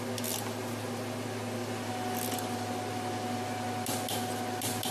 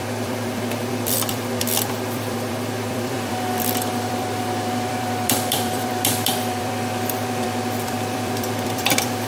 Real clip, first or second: first